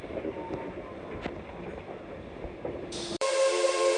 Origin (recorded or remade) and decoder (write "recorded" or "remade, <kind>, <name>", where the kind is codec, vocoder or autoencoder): remade, vocoder, BigVGAN v2